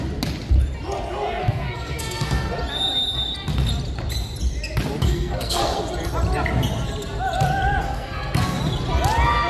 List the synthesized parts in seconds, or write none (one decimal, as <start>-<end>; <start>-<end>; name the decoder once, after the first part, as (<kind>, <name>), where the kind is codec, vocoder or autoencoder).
1.4-2.5 (codec, SNAC); 5.0-5.8; 7.8-8.6